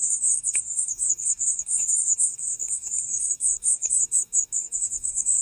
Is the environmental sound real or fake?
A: fake